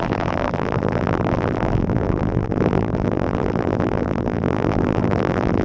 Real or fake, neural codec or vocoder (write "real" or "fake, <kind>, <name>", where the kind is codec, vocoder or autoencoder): fake, vocoder, BigVGAN v2